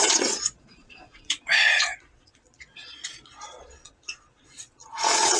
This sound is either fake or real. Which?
fake